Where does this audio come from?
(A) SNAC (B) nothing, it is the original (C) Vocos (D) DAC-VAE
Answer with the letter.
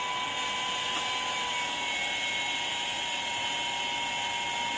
B